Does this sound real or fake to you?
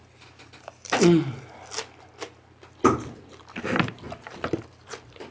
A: real